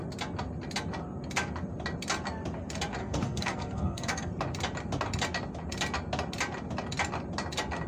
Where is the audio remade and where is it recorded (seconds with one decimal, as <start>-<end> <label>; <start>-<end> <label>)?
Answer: 0.0-3.0 recorded; 3.0-4.3 remade; 4.3-7.9 recorded